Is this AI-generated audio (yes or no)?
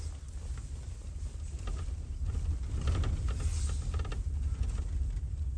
no